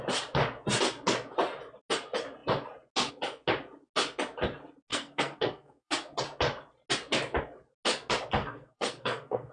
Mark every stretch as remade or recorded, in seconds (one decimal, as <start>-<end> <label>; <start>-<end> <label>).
0.0-4.9 recorded; 4.9-5.9 remade; 5.9-8.4 recorded; 8.4-9.5 remade